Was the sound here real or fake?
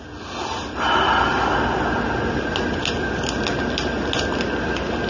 real